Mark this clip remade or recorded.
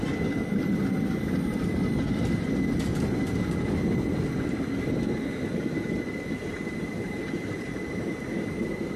recorded